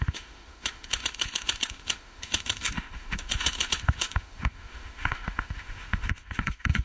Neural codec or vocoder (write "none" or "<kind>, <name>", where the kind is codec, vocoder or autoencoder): autoencoder, DAC-VAE